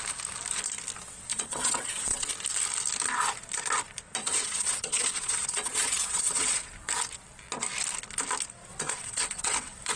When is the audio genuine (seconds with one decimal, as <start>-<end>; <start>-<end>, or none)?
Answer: 0.0-1.3; 2.3-4.2; 6.9-8.7